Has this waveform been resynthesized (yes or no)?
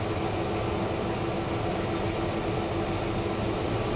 no